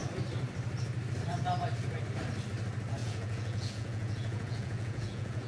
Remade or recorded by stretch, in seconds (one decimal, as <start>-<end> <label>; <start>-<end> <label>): 0.0-3.0 recorded; 3.0-5.5 remade